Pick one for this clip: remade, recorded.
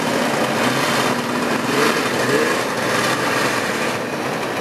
remade